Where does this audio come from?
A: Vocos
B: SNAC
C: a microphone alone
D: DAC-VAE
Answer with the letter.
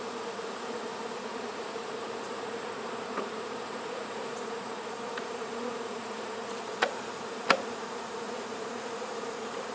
A